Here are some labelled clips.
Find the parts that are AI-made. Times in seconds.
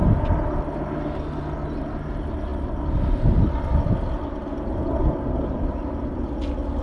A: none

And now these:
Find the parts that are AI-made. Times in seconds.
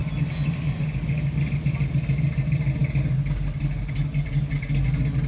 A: none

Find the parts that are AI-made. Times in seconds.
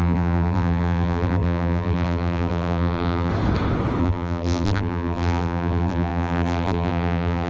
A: 0.0-3.3 (vocoder, BigVGAN v2); 4.0-7.5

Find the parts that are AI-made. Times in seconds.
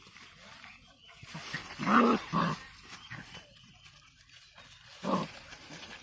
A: 0.0-1.6 (vocoder, BigVGAN v2); 2.4-6.0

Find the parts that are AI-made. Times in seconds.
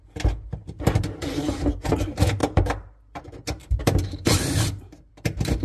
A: 2.4-3.2 (vocoder, BigVGAN v2); 3.6-5.1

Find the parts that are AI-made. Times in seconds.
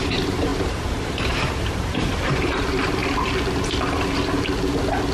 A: 0.0-3.0 (vocoder, BigVGAN v2)